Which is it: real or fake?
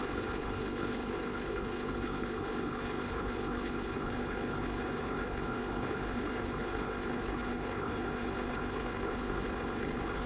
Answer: fake